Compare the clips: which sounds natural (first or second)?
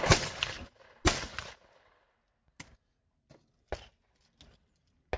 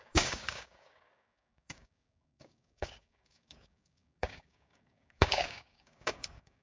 first